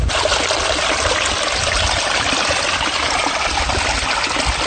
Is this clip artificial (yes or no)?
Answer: no